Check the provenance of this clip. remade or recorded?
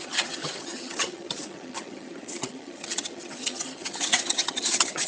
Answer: remade